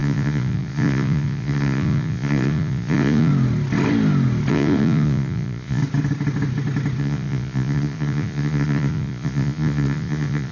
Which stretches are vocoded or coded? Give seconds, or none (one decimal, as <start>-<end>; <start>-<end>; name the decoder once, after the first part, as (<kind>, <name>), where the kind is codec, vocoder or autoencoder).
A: 0.0-3.3 (vocoder, Vocos); 4.5-5.8; 7.0-10.5